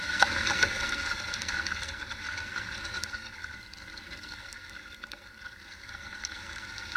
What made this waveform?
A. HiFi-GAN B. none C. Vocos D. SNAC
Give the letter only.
D